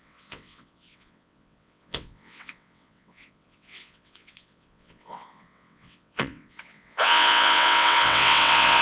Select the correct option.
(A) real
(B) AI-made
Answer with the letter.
B